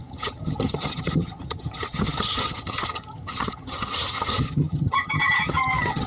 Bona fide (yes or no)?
no